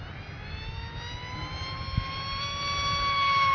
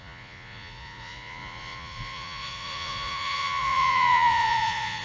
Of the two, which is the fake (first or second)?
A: second